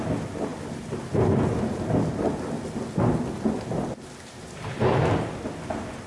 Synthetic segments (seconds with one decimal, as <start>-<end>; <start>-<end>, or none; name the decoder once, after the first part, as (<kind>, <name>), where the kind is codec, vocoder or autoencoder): none